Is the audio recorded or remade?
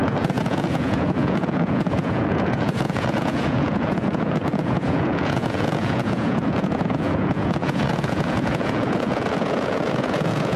remade